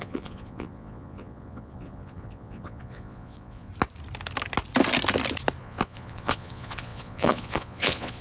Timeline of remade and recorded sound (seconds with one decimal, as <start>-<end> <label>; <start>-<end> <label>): 0.0-3.7 remade; 3.7-5.6 recorded; 5.6-8.2 remade